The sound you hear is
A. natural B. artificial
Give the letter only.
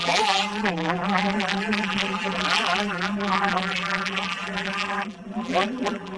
B